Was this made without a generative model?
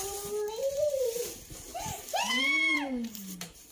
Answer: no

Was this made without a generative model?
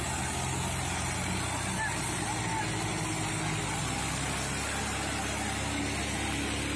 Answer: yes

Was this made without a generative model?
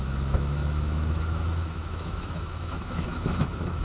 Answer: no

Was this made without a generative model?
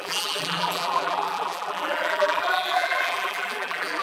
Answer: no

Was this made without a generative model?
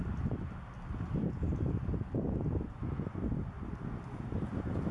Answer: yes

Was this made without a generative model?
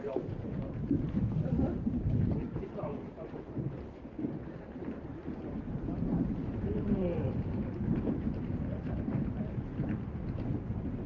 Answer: no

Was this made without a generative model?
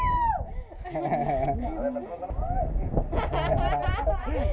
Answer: yes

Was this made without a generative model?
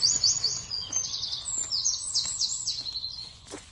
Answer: no